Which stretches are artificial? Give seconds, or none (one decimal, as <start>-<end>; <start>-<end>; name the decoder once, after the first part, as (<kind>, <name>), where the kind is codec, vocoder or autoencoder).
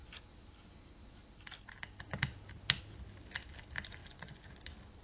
4.0-4.5 (vocoder, Vocos)